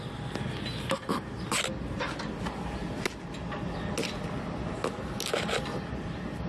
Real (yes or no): yes